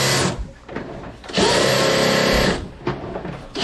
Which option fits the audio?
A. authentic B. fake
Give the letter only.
A